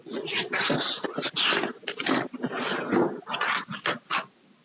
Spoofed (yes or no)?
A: no